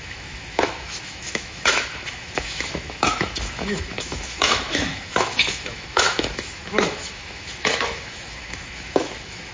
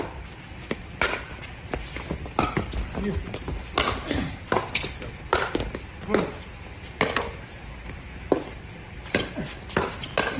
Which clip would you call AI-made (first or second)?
first